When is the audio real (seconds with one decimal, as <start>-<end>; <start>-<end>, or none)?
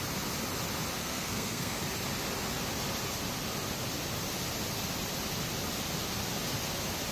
0.0-1.0; 1.8-7.1